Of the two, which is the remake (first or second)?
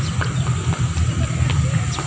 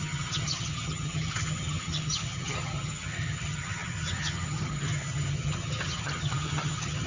second